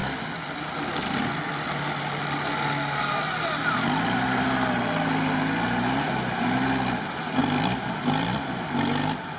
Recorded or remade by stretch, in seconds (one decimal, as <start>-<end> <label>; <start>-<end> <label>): 0.0-7.4 recorded; 7.4-8.4 remade; 8.4-9.4 recorded